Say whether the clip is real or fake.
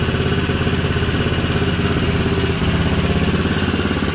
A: real